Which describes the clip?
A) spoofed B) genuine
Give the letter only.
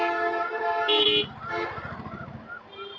B